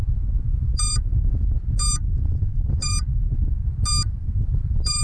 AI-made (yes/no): no